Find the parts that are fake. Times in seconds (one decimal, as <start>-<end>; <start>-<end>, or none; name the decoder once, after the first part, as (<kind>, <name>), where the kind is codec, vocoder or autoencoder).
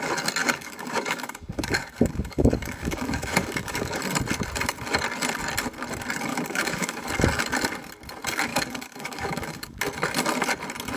0.4-4.0 (codec, DAC); 6.3-7.0; 8.5-9.8